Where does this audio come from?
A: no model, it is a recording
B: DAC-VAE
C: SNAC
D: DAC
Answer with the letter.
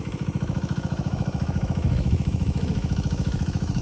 B